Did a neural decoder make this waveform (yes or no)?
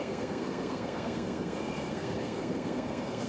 yes